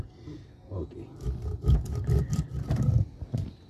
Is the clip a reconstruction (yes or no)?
no